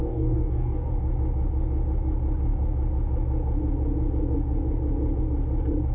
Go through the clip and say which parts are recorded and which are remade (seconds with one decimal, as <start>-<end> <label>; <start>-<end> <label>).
0.0-0.9 remade; 0.9-5.9 recorded